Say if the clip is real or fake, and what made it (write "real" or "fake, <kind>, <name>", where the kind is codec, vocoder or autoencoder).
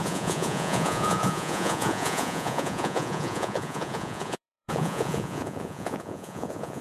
fake, vocoder, Vocos